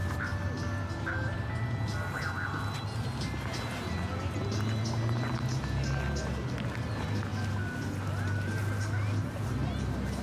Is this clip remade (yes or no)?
no